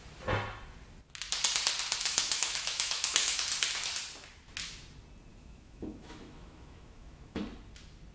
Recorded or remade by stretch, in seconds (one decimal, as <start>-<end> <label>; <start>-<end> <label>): 0.0-2.0 recorded; 2.0-3.4 remade; 3.4-5.3 recorded; 5.3-7.4 remade; 7.4-8.1 recorded